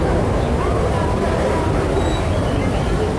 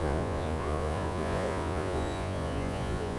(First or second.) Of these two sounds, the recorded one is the first